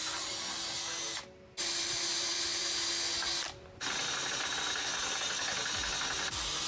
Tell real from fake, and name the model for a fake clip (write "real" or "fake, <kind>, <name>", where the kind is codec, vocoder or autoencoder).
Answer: real